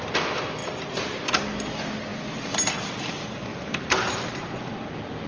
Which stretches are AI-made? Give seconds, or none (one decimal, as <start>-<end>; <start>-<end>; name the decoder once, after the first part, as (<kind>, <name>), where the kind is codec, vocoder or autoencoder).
0.6-1.3 (vocoder, BigVGAN v2); 3.5-4.7